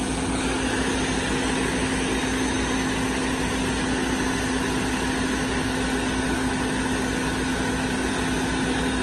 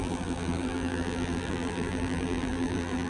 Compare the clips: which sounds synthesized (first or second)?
second